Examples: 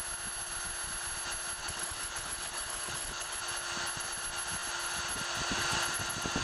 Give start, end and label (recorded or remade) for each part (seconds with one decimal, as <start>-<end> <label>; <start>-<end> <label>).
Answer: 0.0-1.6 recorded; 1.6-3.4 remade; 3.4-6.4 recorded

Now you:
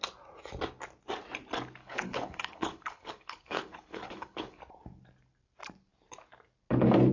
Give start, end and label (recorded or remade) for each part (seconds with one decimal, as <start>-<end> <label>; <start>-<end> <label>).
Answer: 0.0-1.8 recorded; 1.8-4.6 remade; 4.6-7.1 recorded

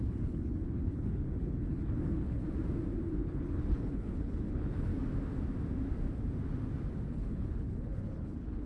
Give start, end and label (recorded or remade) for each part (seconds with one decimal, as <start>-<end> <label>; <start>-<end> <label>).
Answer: 0.0-2.4 remade; 2.4-3.2 recorded; 3.2-4.9 remade; 4.9-7.1 recorded; 7.1-8.7 remade

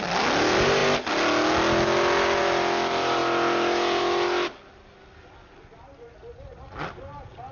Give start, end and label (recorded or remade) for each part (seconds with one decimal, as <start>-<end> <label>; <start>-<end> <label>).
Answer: 0.0-7.5 recorded